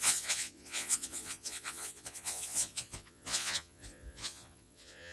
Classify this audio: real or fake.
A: fake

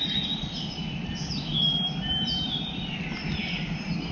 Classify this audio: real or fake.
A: real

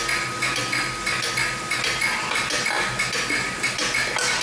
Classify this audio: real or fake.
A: real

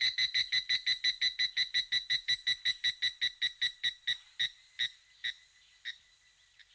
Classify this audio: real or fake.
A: real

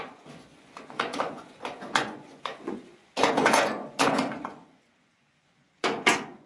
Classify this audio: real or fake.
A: fake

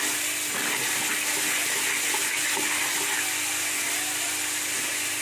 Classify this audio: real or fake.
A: real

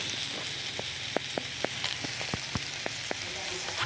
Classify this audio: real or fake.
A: real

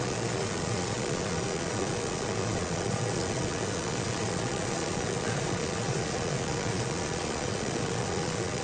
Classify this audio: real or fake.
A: fake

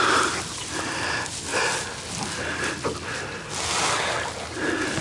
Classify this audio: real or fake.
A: real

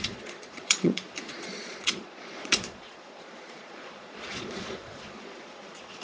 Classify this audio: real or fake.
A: fake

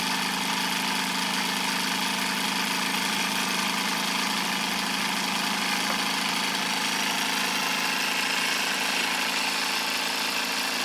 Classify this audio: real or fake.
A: real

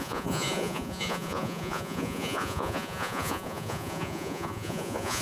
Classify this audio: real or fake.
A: fake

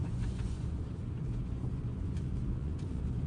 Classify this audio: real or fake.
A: fake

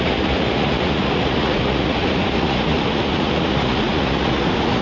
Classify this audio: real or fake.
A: fake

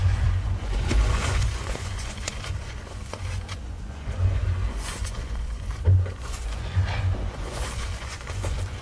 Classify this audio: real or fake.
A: fake